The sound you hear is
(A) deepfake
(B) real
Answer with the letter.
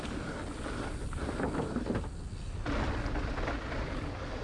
B